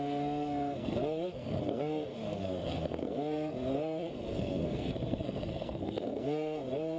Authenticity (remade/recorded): remade